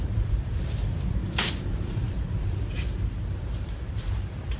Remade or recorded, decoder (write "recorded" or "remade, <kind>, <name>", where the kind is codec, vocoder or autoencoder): remade, vocoder, BigVGAN v2